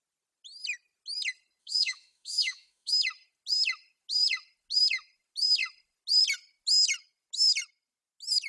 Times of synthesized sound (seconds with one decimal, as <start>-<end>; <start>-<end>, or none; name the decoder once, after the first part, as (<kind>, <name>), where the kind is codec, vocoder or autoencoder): 1.6-2.9 (autoencoder, DAC-VAE)